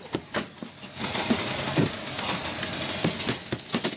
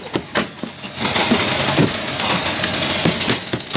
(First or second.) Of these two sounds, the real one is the second